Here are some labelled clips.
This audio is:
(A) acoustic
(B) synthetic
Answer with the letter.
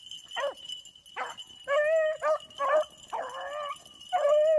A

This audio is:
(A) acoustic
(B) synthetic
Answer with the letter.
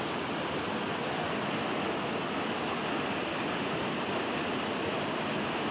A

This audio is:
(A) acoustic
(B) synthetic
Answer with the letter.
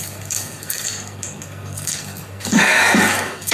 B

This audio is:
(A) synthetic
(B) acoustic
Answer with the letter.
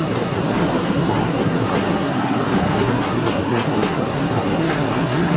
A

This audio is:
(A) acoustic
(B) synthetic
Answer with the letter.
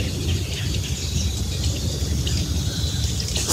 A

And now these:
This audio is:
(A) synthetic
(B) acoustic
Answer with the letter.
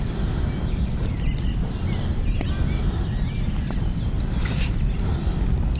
B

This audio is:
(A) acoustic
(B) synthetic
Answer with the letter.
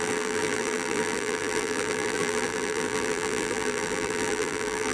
B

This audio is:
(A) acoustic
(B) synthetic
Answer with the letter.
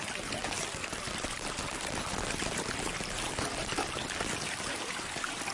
A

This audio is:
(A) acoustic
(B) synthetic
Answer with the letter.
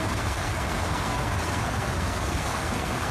B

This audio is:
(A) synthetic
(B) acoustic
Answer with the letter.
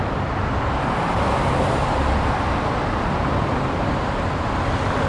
B